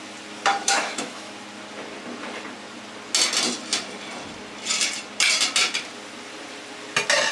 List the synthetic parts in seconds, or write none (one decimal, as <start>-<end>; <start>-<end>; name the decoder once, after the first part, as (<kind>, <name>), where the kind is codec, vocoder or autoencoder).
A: 0.6-1.3 (autoencoder, DAC-VAE)